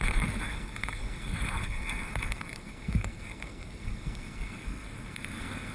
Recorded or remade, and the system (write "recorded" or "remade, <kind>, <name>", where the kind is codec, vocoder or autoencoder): remade, codec, SNAC